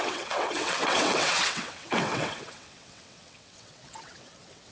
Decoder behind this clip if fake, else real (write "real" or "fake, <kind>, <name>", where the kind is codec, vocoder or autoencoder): fake, vocoder, WaveNeXt